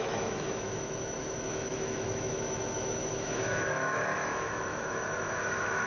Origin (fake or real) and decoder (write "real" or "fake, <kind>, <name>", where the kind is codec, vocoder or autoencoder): fake, autoencoder, DAC-VAE